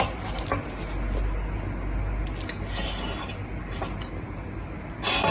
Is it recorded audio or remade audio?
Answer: recorded